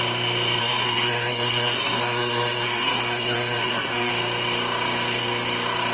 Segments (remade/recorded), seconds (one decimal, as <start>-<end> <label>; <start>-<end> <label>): 0.0-0.6 recorded; 0.6-4.1 remade; 4.1-5.9 recorded